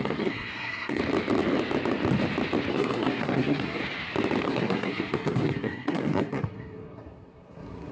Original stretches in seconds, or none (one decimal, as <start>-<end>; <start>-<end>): 1.0-2.7; 3.8-4.4